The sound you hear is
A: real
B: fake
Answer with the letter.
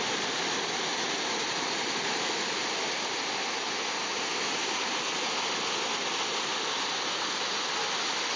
A